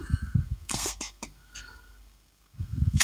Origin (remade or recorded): remade